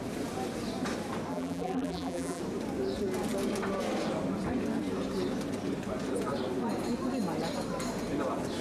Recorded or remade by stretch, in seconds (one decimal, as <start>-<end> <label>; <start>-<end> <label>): 0.0-1.3 recorded; 1.3-2.4 remade; 2.4-8.6 recorded